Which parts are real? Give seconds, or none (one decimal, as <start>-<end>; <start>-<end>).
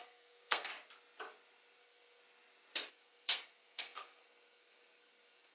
0.7-1.8; 2.2-2.9